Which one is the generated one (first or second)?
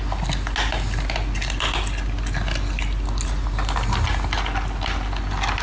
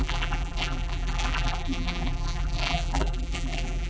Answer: second